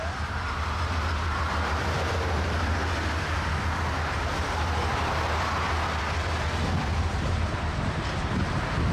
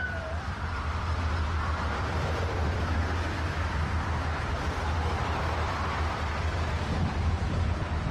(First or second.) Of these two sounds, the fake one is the second